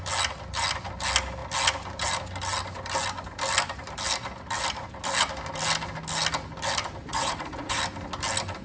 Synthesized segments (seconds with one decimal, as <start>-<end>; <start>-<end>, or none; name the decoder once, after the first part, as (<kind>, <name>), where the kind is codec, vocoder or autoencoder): 7.1-7.8 (vocoder, Vocos)